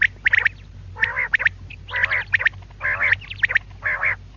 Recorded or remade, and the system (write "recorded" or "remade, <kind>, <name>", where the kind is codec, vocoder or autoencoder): recorded